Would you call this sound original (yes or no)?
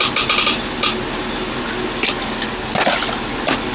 yes